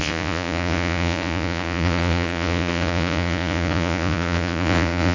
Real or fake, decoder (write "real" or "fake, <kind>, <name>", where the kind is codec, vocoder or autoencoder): fake, vocoder, Vocos